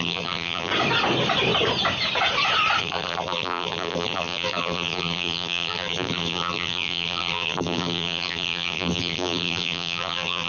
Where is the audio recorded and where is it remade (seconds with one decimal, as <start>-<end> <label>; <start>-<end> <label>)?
0.0-0.7 remade; 0.7-2.8 recorded; 2.8-10.5 remade